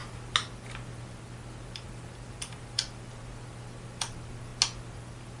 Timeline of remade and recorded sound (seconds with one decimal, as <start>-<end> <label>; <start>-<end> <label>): 0.0-5.4 recorded